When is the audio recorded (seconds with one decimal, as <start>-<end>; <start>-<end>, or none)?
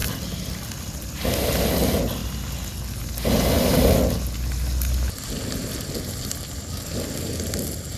0.0-8.0